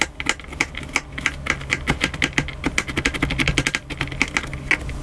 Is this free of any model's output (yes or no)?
yes